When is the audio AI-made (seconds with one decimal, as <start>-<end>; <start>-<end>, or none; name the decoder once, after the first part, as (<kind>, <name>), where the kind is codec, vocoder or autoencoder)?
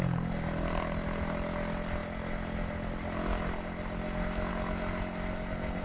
none